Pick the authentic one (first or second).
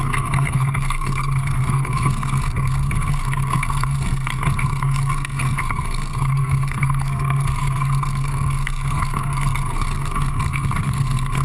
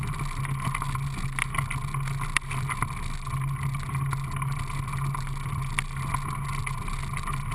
second